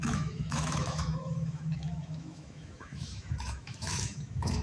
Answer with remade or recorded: remade